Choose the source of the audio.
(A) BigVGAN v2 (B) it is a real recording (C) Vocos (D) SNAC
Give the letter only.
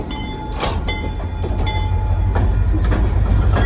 B